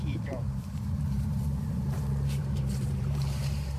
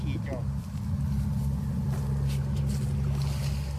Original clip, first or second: second